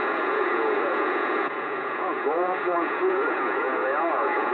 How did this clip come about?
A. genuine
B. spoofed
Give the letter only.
B